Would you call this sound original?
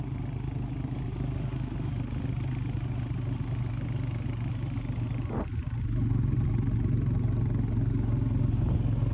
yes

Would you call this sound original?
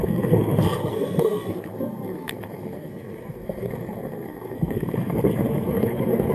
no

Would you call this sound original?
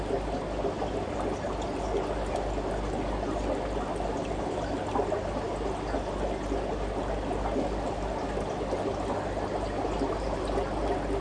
yes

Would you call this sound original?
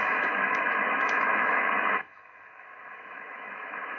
no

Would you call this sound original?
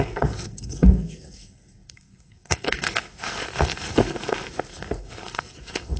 no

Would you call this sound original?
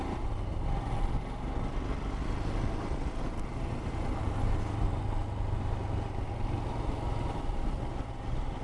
yes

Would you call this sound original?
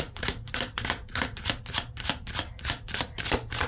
yes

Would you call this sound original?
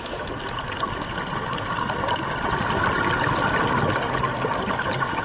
yes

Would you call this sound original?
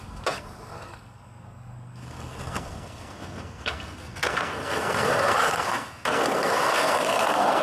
no